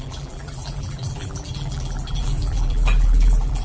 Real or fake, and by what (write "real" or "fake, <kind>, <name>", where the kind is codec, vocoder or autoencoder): fake, vocoder, BigVGAN v2